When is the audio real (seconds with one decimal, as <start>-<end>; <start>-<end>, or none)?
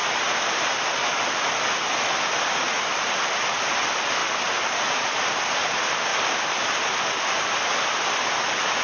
2.3-6.1; 8.1-8.8